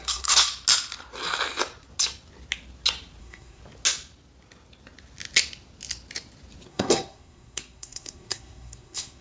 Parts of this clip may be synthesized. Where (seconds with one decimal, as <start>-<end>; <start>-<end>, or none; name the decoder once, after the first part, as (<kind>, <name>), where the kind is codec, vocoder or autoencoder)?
0.0-0.5 (codec, SNAC); 3.2-3.6; 6.7-9.2